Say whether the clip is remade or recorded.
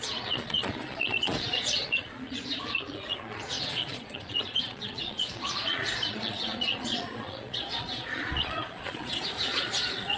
remade